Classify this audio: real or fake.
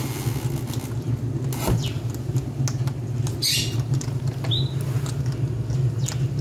real